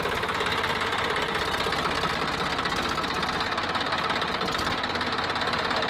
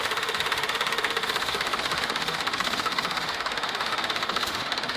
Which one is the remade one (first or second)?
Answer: second